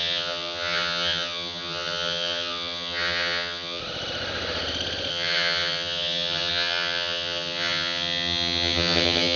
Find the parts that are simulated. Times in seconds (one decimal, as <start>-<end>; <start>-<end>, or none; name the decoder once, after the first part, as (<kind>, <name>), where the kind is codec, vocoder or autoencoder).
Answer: 0.0-3.8 (vocoder, HiFi-GAN); 5.1-9.4